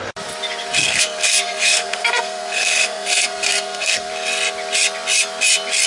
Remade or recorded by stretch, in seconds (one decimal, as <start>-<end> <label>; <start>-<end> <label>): 0.0-0.8 recorded; 0.8-4.1 remade; 4.1-5.9 recorded